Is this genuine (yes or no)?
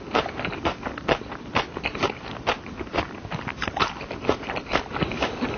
no